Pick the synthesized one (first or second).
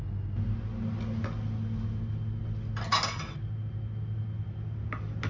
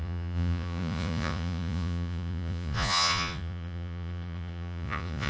second